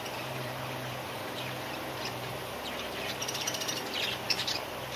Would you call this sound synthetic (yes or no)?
yes